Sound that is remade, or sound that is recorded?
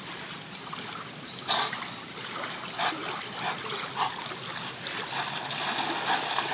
recorded